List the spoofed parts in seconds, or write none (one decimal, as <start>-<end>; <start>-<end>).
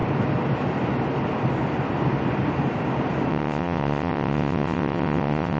3.3-5.6